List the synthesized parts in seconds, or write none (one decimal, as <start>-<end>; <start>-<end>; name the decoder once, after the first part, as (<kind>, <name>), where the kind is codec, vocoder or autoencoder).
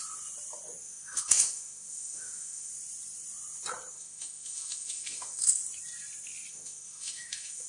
0.8-2.7 (autoencoder, DAC-VAE); 3.9-5.6; 6.5-7.7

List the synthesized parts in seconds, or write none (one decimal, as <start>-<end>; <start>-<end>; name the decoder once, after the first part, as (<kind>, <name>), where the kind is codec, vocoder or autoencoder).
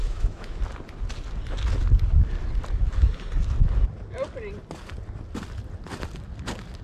0.0-0.6 (autoencoder, DAC-VAE)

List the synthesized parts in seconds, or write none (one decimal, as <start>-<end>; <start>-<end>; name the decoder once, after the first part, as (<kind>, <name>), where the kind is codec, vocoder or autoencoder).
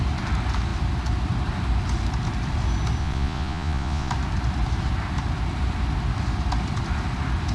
3.0-4.1 (vocoder, Vocos)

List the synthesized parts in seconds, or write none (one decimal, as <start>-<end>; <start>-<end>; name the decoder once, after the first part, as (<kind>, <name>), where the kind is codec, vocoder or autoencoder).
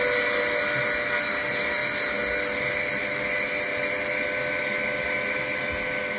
none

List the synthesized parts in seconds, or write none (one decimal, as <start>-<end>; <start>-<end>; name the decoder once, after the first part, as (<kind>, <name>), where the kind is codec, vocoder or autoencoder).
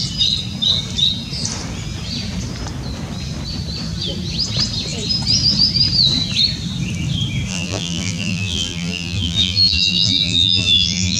7.5-11.2 (vocoder, BigVGAN v2)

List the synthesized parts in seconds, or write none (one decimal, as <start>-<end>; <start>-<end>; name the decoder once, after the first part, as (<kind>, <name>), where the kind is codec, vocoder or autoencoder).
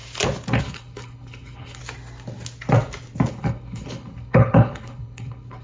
0.6-1.8 (codec, HILCodec); 3.3-5.6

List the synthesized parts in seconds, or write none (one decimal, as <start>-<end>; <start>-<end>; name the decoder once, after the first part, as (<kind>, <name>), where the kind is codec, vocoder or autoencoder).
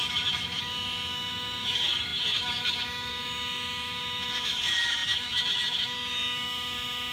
0.0-7.1 (autoencoder, DAC-VAE)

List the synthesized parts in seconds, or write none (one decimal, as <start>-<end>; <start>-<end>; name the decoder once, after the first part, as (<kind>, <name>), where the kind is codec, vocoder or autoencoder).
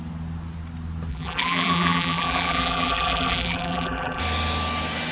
1.1-4.2 (vocoder, BigVGAN v2)